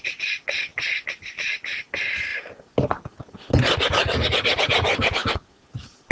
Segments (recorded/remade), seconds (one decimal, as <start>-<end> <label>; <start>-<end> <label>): 0.0-6.1 recorded